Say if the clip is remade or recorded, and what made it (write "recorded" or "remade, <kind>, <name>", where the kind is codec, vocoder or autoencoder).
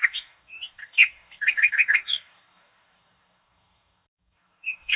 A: remade, codec, DAC